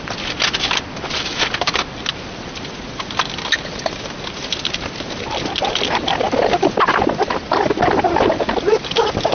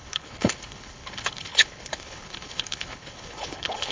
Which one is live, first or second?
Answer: first